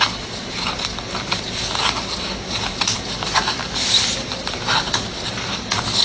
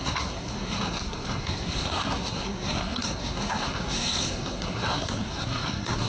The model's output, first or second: second